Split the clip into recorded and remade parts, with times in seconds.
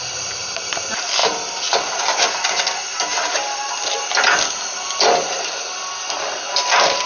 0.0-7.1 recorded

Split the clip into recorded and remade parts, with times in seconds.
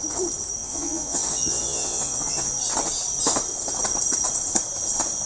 0.0-0.6 recorded; 0.6-2.5 remade; 2.5-5.3 recorded